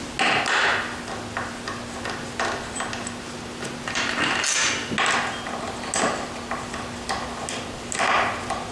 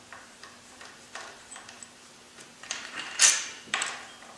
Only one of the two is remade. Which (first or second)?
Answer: second